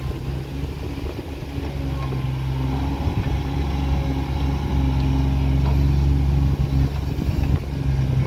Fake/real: real